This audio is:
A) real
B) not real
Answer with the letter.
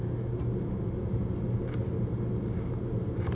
A